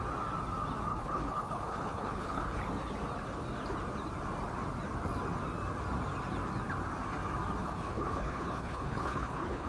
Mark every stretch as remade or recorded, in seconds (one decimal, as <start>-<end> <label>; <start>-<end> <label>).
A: 0.0-0.9 recorded; 0.9-2.6 remade; 2.6-7.6 recorded; 7.6-9.7 remade